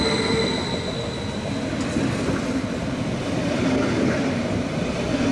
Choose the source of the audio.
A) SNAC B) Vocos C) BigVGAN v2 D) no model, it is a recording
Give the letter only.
D